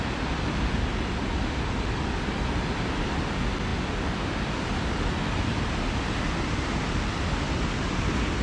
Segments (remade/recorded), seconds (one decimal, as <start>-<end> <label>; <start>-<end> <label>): 0.0-8.4 recorded